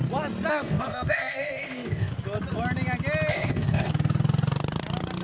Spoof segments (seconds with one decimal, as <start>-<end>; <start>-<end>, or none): 0.5-2.1; 3.3-3.9